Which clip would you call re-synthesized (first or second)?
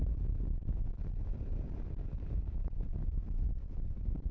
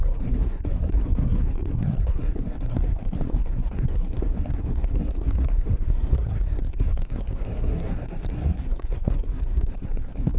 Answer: second